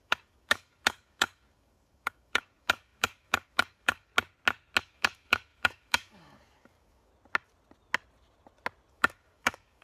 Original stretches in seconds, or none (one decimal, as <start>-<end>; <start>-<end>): 4.1-4.8; 7.1-8.9